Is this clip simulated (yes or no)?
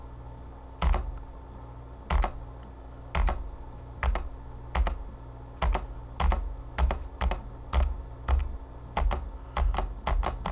no